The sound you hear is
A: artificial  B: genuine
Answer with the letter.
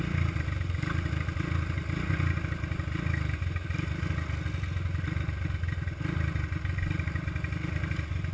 B